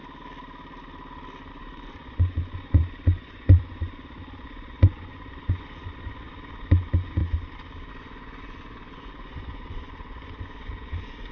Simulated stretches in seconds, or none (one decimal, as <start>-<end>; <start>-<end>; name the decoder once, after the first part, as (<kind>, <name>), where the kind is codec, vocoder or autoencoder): 1.5-7.2 (vocoder, Vocos); 7.9-11.3